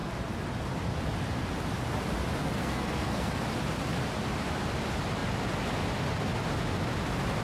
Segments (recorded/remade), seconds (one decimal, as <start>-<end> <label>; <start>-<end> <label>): 0.0-2.4 recorded; 2.4-3.3 remade; 3.3-7.4 recorded